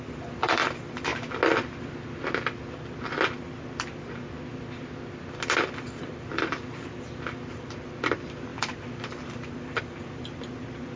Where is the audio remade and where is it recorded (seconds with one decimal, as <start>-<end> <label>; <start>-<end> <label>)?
0.0-1.1 remade; 1.1-5.6 recorded; 5.6-11.0 remade